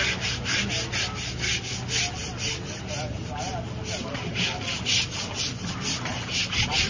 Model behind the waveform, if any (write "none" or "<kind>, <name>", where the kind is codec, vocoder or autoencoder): none